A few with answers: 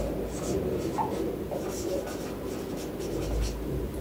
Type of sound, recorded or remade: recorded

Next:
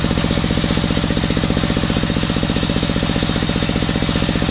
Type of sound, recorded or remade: recorded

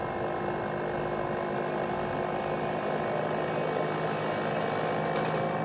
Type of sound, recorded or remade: recorded